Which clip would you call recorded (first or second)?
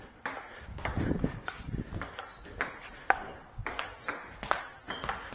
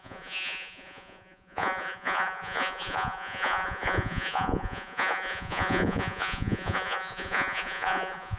first